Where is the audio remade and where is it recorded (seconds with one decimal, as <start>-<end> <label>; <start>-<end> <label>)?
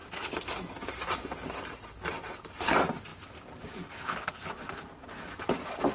0.0-5.9 recorded